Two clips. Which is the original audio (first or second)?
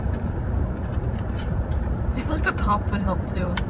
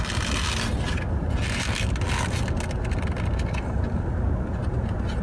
second